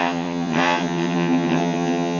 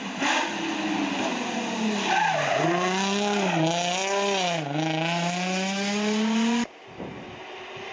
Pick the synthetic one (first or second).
first